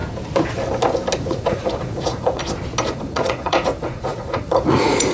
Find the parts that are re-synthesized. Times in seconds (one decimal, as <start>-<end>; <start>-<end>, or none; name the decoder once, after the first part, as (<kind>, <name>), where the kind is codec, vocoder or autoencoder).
1.2-2.4 (vocoder, Vocos); 2.9-5.1